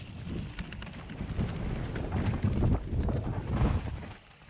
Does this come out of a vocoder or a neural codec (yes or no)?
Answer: no